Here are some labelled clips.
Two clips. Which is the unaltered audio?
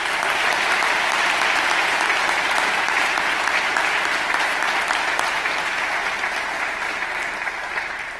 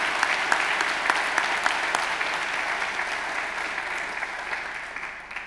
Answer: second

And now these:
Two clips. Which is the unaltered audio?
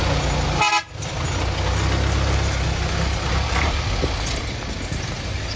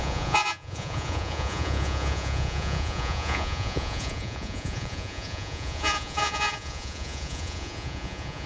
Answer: first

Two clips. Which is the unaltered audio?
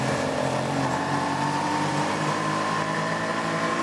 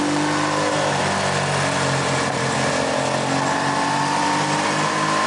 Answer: second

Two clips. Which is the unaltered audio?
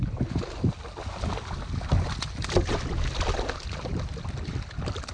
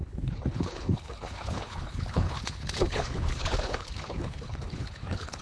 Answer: first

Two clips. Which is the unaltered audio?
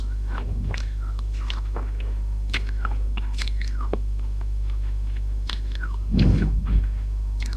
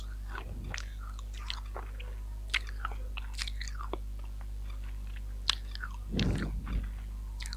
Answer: second